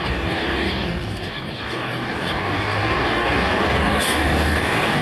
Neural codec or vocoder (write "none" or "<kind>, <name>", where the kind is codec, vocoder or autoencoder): codec, DAC